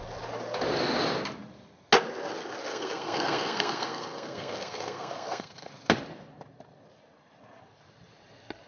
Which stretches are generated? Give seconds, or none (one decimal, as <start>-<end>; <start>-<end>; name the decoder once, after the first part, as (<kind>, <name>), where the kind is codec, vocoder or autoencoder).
2.7-5.7 (codec, SNAC)